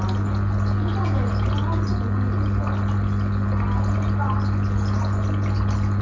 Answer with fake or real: real